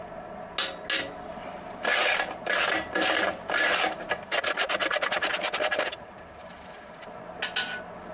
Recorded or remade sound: recorded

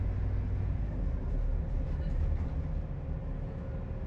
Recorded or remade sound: recorded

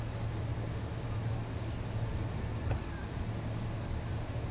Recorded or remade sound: recorded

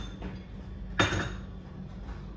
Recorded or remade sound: recorded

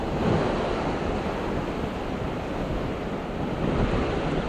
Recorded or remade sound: recorded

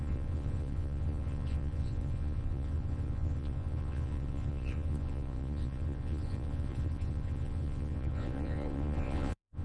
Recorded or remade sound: remade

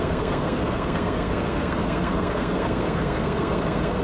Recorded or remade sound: remade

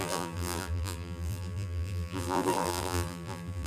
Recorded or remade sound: remade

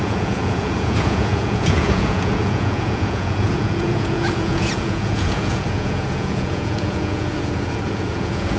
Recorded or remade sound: remade